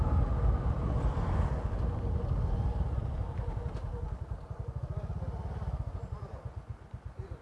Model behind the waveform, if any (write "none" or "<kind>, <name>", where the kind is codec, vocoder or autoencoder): none